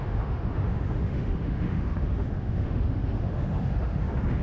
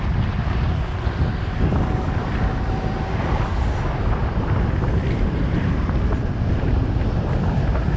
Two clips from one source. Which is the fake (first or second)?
first